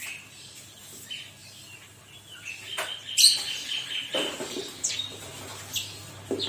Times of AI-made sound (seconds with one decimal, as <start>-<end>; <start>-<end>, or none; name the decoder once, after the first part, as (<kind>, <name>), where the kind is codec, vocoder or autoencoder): none